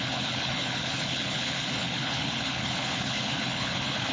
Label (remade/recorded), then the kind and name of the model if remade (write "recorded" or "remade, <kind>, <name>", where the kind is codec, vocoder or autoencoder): remade, codec, HILCodec